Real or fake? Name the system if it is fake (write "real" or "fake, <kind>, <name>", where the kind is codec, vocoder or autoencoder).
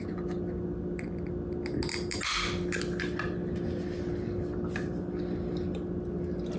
real